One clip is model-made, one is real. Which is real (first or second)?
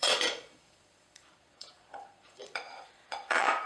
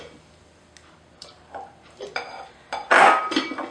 second